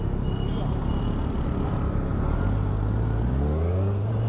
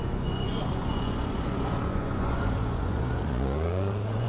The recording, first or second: first